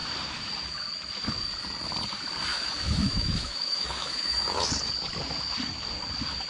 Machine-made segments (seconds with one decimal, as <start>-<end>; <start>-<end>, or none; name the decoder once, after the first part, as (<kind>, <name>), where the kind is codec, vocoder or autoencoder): 2.5-4.7 (autoencoder, DAC-VAE)